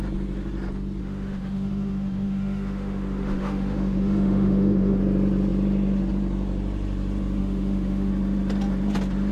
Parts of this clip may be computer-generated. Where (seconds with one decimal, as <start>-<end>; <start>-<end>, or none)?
1.0-5.0; 7.4-8.1